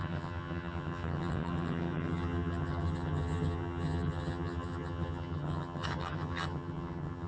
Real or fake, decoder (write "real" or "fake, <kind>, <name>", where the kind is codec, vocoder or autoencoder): fake, vocoder, HiFi-GAN